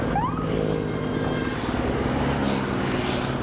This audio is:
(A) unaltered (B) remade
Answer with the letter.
A